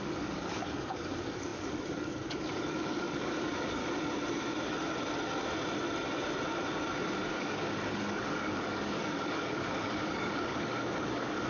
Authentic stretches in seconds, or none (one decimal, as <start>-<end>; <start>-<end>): 3.8-7.3